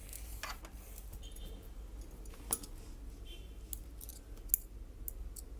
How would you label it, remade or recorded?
recorded